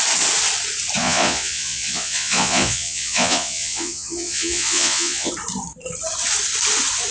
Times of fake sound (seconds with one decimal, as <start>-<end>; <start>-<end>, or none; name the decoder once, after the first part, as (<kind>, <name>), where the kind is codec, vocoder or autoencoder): 1.0-5.3 (vocoder, Vocos)